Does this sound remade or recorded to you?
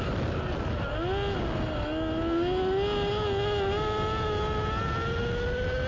recorded